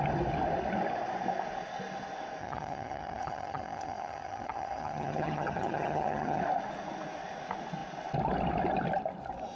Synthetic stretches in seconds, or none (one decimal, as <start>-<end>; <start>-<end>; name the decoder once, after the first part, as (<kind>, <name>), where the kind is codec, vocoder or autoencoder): 2.4-6.4 (vocoder, HiFi-GAN)